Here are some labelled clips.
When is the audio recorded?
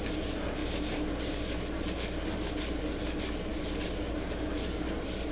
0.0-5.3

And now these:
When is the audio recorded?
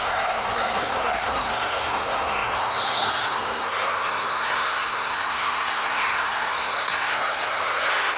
none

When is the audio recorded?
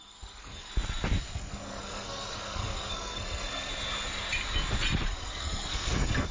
0.7-1.2; 3.7-5.1